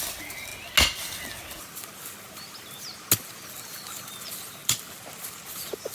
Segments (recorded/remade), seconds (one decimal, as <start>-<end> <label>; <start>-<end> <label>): 0.0-5.9 recorded